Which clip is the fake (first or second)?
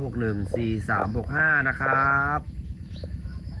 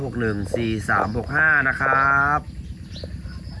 first